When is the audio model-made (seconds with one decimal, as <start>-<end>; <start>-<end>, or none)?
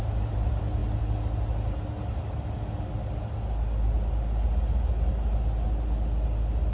none